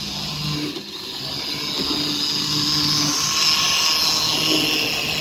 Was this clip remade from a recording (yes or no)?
no